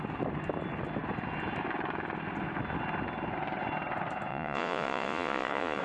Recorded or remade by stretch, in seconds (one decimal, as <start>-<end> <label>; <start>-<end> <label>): 0.0-4.3 recorded; 4.3-5.8 remade